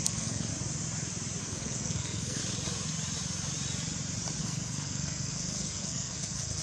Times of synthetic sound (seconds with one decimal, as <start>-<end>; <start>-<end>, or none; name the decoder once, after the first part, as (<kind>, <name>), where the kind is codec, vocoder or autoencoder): 0.0-0.5 (codec, SNAC); 1.4-2.4; 4.4-6.6